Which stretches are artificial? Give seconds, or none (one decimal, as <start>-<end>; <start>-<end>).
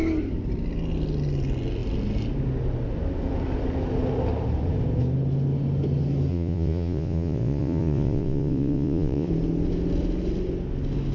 6.3-9.3